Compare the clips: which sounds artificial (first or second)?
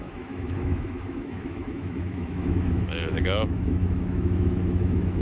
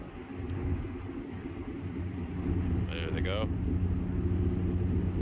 first